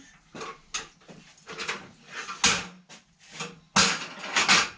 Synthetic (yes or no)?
no